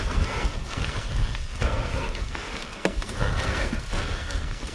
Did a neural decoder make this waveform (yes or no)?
yes